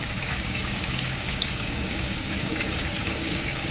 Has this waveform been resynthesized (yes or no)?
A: yes